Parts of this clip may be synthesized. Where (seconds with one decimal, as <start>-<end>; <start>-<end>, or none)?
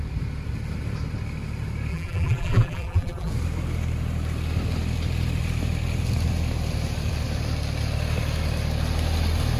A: 1.9-3.3